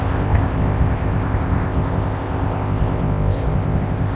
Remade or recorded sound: remade